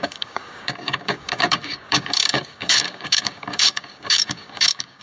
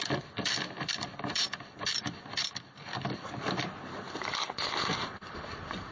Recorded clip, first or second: second